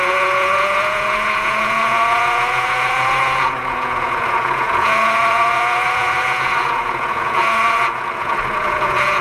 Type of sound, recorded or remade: remade